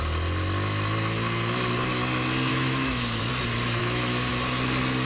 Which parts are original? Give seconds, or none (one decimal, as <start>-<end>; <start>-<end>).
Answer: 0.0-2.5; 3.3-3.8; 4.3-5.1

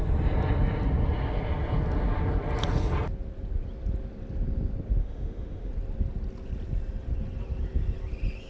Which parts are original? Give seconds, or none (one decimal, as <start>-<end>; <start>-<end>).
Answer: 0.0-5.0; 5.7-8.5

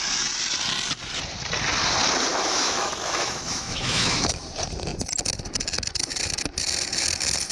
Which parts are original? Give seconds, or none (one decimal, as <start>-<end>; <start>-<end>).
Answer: 0.0-2.3; 4.4-7.5